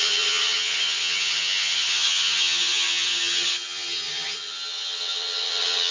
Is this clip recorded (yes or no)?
no